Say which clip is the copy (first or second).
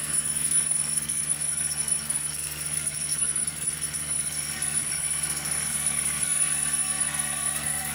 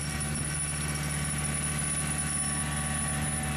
first